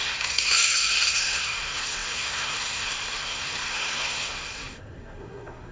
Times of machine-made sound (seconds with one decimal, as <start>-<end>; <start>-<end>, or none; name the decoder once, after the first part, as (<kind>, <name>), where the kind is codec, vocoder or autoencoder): 0.0-5.7 (codec, SNAC)